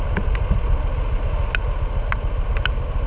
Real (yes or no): yes